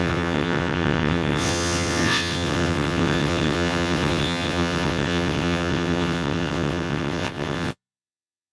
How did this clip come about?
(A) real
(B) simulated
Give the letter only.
B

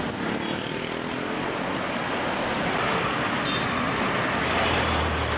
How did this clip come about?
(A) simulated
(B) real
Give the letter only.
B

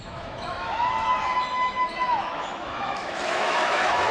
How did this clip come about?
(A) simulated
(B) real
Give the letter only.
A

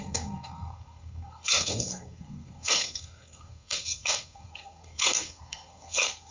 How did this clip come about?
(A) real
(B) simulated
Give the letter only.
B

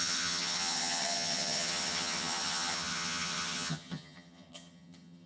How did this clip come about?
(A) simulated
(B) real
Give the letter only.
A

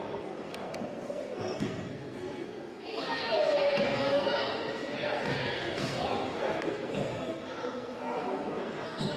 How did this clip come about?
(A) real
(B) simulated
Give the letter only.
B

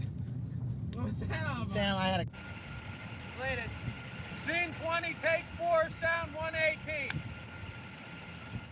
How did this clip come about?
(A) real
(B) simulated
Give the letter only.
A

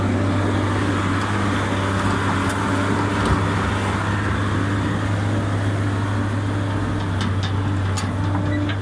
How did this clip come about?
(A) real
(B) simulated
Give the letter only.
A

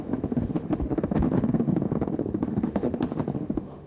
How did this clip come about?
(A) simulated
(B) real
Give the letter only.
A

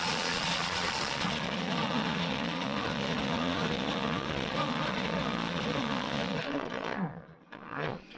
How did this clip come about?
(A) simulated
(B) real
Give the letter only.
A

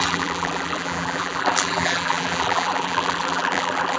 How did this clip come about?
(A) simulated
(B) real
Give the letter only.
A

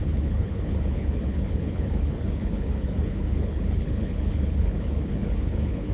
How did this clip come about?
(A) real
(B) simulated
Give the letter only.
B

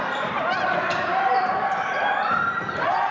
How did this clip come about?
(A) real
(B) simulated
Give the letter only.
B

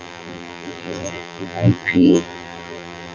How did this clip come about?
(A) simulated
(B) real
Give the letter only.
A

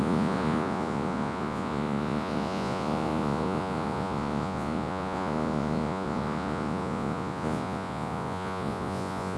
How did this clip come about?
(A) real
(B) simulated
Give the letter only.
B